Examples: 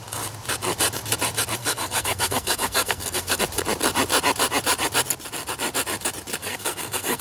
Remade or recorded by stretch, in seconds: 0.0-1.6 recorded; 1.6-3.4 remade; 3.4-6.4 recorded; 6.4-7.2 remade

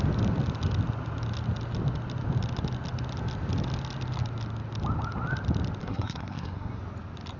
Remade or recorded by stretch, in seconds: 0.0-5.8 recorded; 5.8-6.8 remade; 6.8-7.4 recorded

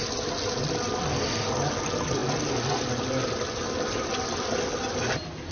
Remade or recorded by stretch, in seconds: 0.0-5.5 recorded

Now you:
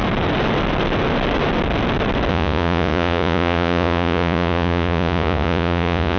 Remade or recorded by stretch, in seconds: 0.0-2.3 recorded; 2.3-6.2 remade

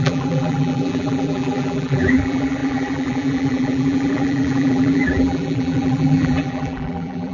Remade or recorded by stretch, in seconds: 0.0-7.3 remade

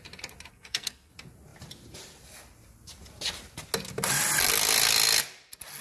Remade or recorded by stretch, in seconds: 0.0-0.5 recorded; 0.5-1.1 remade; 1.1-5.8 recorded

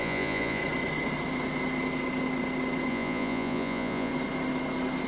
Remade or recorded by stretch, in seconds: 0.0-0.6 remade; 0.6-2.9 recorded; 2.9-4.1 remade; 4.1-5.1 recorded

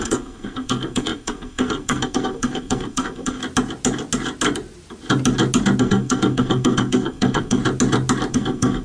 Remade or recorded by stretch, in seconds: 0.0-3.4 remade; 3.4-5.8 recorded; 5.8-7.6 remade; 7.6-8.3 recorded; 8.3-8.8 remade